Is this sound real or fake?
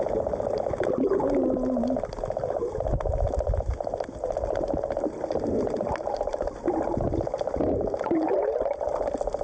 real